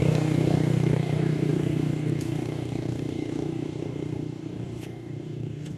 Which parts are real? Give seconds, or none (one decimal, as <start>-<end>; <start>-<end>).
none